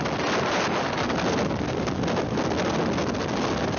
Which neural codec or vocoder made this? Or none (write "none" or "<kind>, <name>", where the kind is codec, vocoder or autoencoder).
none